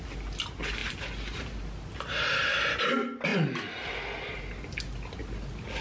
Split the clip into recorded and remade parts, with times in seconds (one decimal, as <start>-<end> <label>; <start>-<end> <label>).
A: 0.0-0.8 recorded; 0.8-1.4 remade; 1.4-3.3 recorded; 3.3-4.4 remade; 4.4-5.8 recorded